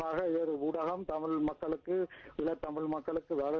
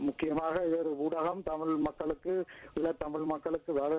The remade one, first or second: second